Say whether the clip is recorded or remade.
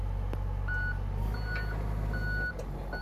recorded